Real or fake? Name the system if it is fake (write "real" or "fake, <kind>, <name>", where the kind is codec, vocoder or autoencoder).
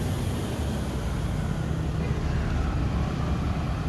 real